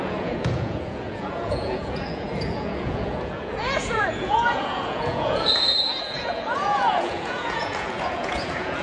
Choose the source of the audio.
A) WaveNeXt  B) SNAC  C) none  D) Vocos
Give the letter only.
D